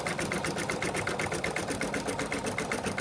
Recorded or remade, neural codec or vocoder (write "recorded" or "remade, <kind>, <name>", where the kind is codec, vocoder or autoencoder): recorded